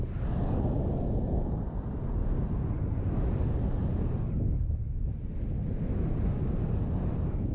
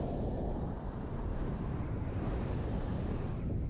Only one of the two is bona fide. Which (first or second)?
first